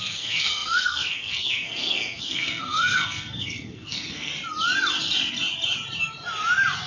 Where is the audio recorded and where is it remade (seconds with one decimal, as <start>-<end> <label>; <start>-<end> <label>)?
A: 0.0-4.3 remade; 4.3-6.9 recorded